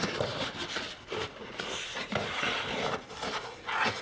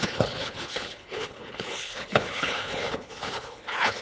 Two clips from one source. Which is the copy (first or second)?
second